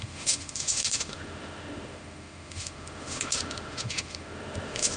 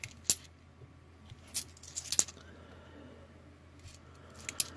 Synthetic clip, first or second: first